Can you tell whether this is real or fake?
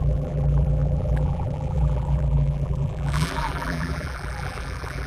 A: fake